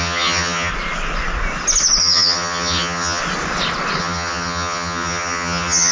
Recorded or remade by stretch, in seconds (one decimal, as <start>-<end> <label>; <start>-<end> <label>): 0.0-0.7 remade; 0.7-2.0 recorded; 2.0-3.2 remade; 3.2-4.0 recorded; 4.0-5.9 remade